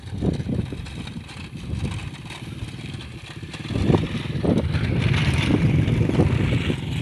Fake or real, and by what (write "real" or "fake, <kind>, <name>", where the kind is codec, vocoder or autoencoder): real